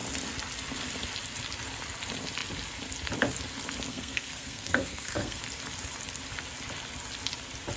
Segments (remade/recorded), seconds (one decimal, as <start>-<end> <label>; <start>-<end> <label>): 0.0-3.9 recorded; 3.9-5.4 remade; 5.4-7.8 recorded